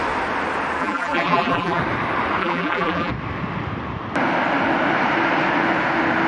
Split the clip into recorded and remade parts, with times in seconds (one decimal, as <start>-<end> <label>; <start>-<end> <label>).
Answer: 0.0-0.8 recorded; 0.8-1.8 remade; 1.8-2.4 recorded; 2.4-3.1 remade; 3.1-6.3 recorded